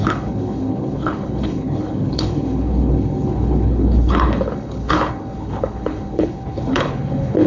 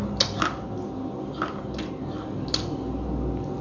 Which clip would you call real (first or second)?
second